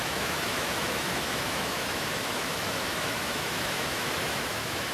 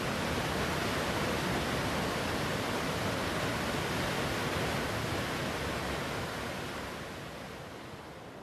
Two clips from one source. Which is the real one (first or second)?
second